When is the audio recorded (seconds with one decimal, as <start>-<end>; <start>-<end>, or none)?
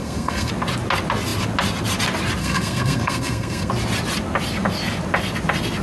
0.5-2.4; 3.7-5.8